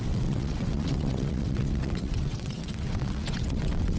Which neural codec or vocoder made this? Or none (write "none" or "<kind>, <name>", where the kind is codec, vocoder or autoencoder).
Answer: vocoder, WaveNeXt